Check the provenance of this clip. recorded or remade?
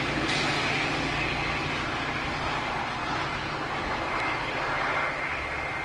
recorded